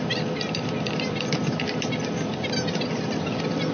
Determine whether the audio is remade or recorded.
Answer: recorded